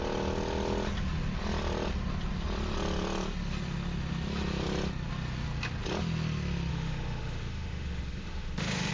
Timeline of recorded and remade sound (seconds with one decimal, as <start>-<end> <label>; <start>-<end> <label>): 0.0-6.7 recorded; 6.7-8.9 remade